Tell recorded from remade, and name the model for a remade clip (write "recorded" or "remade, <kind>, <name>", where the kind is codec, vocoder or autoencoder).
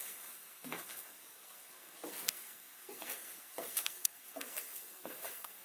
remade, codec, SNAC